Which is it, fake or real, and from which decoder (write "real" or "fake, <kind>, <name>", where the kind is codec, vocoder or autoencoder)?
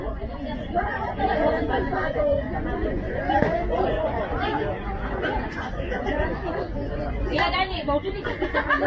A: fake, vocoder, Vocos